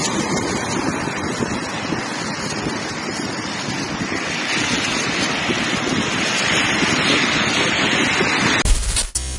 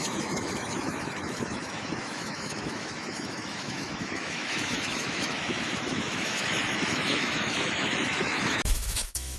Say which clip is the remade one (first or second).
second